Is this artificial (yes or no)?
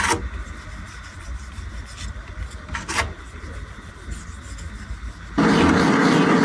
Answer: no